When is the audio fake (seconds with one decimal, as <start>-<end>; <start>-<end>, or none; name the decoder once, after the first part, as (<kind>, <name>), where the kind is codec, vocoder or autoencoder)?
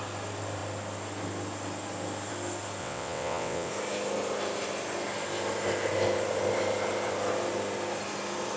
2.8-3.7 (vocoder, WaveNeXt)